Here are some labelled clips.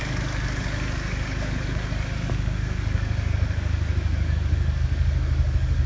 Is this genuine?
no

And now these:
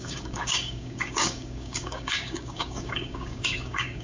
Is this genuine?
no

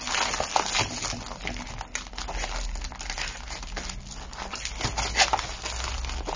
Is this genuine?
yes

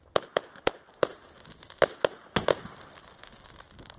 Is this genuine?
yes